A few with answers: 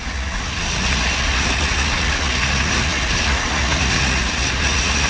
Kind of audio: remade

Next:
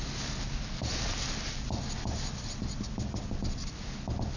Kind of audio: recorded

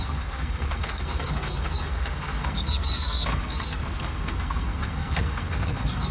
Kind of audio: remade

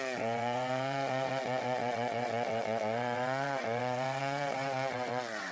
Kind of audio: remade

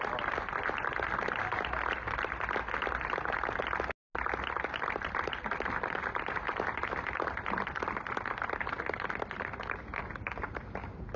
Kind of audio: recorded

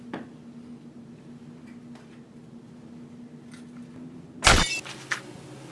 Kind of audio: recorded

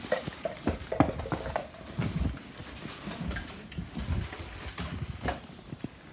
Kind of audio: recorded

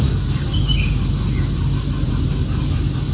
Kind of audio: recorded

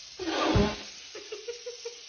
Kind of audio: recorded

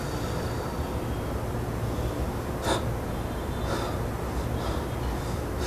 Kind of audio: recorded